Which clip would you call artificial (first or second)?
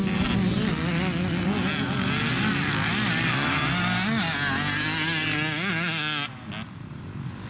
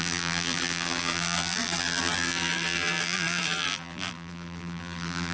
second